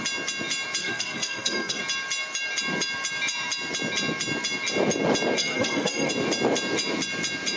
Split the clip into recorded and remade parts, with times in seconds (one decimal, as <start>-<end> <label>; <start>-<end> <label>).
0.0-0.8 recorded; 0.8-1.8 remade; 1.8-5.4 recorded; 5.4-6.1 remade; 6.1-7.6 recorded